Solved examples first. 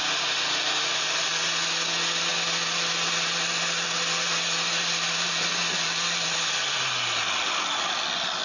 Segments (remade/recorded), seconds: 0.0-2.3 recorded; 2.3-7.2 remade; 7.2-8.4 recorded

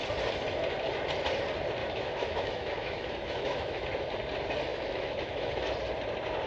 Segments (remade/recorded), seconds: 0.0-1.8 recorded; 1.8-3.8 remade; 3.8-4.7 recorded; 4.7-5.5 remade; 5.5-6.5 recorded

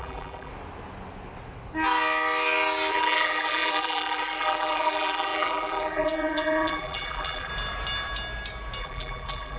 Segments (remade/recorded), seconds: 0.0-0.5 remade; 0.5-2.9 recorded; 2.9-7.5 remade; 7.5-8.8 recorded; 8.8-9.6 remade